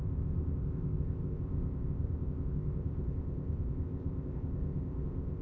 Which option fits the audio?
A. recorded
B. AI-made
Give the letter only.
B